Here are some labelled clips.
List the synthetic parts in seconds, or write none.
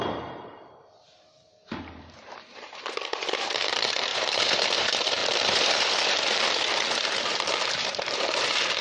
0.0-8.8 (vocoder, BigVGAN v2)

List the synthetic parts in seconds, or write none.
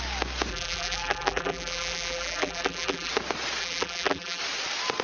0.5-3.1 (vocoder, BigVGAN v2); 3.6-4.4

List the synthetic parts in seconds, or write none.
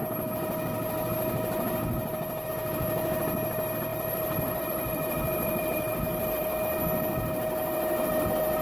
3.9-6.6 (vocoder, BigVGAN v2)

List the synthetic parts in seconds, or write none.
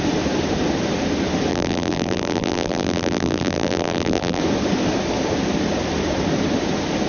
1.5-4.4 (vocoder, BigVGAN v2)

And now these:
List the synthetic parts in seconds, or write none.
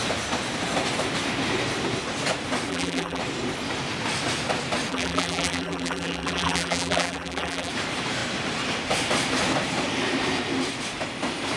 2.7-3.2 (vocoder, BigVGAN v2); 4.9-7.7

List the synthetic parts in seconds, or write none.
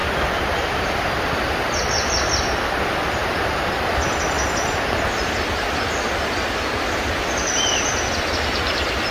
0.0-1.4 (vocoder, BigVGAN v2); 3.2-3.7